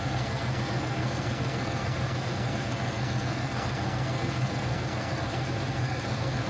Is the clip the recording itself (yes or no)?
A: no